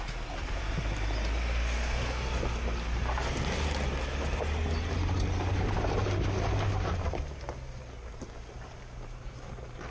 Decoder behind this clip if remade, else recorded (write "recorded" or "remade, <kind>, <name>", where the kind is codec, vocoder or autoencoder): recorded